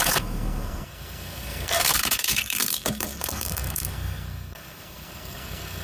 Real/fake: fake